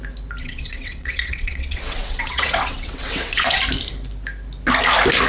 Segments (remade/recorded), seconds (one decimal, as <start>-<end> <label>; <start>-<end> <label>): 0.0-0.4 recorded; 0.4-3.6 remade; 3.6-5.3 recorded

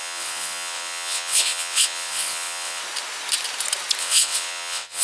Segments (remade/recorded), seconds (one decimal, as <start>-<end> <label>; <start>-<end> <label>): 0.0-2.8 remade; 2.8-4.0 recorded; 4.0-5.0 remade